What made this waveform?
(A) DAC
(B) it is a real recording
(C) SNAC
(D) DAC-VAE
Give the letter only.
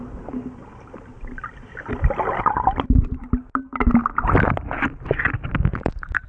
B